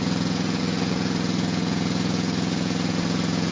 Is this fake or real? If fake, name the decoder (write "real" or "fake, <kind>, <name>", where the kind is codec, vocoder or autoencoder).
fake, vocoder, Vocos